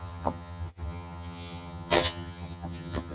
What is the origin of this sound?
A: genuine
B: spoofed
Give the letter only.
B